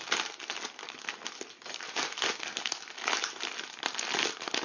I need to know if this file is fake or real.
real